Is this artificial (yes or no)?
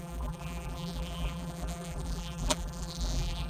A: yes